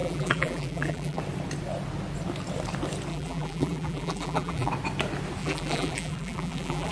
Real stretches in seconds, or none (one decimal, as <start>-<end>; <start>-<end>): 1.2-3.1; 4.7-5.4